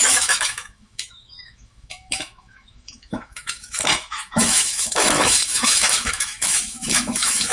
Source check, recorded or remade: remade